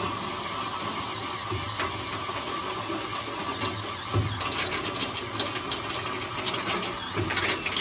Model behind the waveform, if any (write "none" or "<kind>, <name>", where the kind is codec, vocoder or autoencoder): none